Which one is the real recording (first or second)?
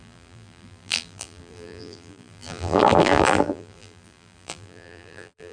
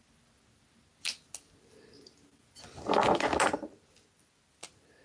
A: second